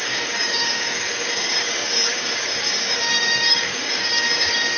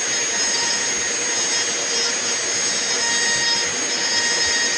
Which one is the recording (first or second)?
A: second